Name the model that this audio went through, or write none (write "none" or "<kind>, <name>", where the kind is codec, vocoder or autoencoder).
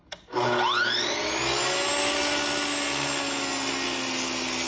none